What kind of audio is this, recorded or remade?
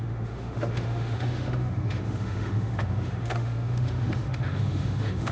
remade